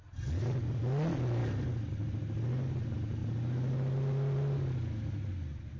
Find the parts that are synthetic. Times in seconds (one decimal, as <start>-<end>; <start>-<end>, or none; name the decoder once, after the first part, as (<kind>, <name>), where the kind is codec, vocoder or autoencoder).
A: none